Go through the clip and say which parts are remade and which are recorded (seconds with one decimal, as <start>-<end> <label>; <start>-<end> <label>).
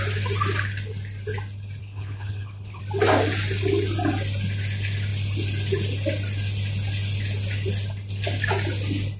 0.0-1.8 recorded; 1.8-2.8 remade; 2.8-9.2 recorded